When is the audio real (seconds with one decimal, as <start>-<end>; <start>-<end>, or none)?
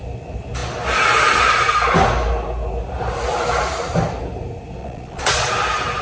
0.0-4.8; 5.5-6.0